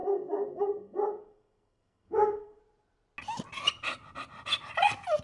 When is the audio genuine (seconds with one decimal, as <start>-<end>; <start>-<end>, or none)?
2.6-5.2